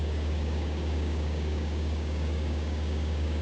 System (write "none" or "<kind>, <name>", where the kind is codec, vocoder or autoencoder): codec, DAC